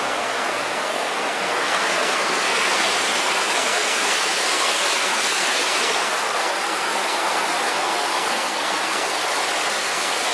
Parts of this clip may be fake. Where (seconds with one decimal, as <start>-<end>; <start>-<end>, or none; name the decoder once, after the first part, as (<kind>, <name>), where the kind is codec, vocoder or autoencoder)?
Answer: 0.0-9.2 (codec, SNAC); 9.8-10.3